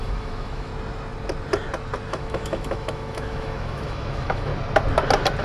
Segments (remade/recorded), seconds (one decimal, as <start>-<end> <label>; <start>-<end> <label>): 0.0-0.7 remade; 0.7-2.1 recorded; 2.1-4.5 remade; 4.5-5.4 recorded